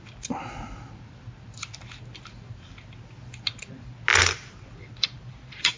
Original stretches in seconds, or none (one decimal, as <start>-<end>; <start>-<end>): 0.0-4.1